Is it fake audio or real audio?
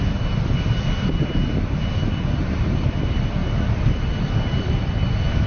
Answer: fake